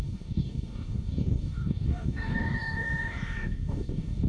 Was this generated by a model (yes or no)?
yes